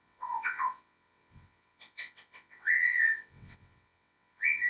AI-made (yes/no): yes